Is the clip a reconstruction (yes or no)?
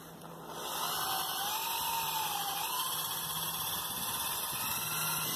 no